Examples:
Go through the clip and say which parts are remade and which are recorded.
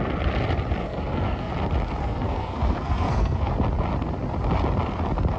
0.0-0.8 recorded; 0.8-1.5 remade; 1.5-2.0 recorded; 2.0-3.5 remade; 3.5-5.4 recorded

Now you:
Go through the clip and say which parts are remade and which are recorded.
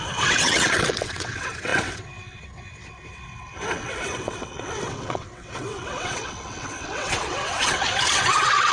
0.0-8.7 remade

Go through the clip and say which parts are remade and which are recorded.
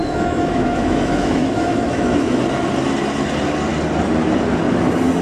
0.0-2.4 remade; 2.4-5.2 recorded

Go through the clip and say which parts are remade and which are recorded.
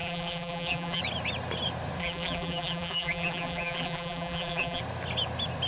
0.0-1.0 remade; 1.0-2.0 recorded; 2.0-4.8 remade; 4.8-5.7 recorded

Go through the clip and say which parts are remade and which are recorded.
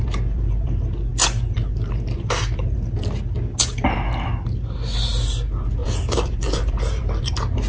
0.0-5.8 recorded; 5.8-7.3 remade; 7.3-7.7 recorded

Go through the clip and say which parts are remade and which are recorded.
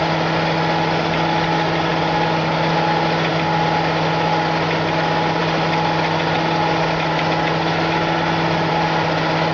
0.0-9.5 recorded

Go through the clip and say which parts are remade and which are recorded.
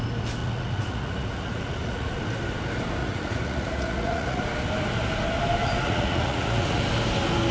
0.0-0.4 recorded; 0.4-2.2 remade; 2.2-3.0 recorded; 3.0-4.4 remade; 4.4-5.6 recorded; 5.6-6.8 remade; 6.8-7.5 recorded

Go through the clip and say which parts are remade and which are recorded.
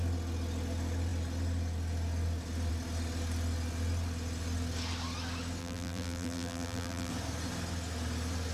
0.0-5.6 recorded; 5.6-7.1 remade; 7.1-8.5 recorded